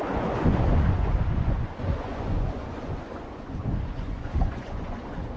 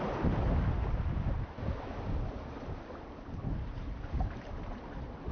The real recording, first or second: second